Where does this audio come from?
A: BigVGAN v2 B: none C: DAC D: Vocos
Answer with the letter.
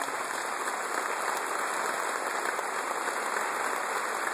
B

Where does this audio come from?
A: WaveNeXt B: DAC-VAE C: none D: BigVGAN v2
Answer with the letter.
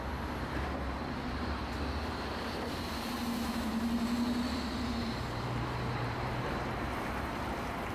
D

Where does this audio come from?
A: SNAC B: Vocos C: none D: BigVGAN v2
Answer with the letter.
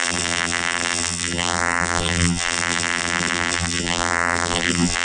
D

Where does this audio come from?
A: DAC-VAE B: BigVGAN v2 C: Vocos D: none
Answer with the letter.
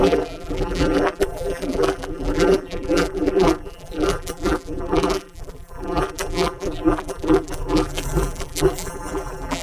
B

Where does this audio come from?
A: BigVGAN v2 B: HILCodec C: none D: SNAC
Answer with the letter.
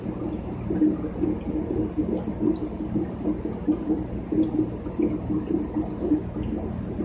C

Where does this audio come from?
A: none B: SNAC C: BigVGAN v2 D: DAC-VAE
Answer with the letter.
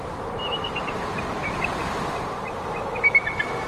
A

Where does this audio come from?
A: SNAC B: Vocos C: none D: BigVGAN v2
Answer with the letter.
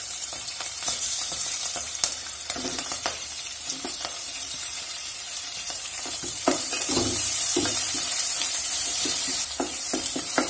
D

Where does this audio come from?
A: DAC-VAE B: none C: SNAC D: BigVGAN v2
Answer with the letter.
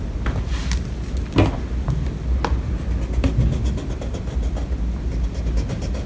B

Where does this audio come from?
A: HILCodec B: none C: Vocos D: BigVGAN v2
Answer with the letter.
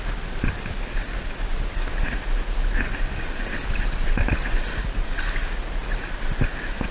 B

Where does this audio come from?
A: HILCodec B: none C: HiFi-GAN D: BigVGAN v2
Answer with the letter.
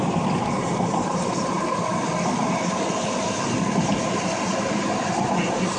B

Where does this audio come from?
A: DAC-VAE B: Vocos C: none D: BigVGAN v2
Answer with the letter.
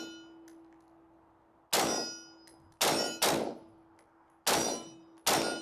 C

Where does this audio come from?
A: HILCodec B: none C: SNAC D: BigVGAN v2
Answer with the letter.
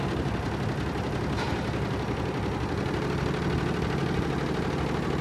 B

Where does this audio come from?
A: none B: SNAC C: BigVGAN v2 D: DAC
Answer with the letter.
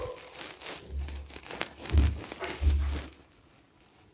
A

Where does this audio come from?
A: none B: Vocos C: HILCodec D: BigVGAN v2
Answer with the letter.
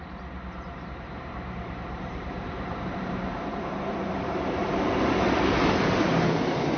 D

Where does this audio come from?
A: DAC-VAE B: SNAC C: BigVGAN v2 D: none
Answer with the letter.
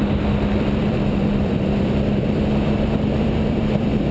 C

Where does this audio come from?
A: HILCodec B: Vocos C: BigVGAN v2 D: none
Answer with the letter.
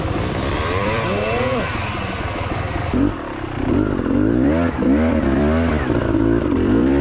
C